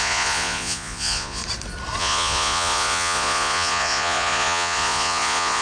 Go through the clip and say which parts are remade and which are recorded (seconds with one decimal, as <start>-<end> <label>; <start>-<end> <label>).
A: 0.0-1.4 remade; 1.4-2.0 recorded; 2.0-5.6 remade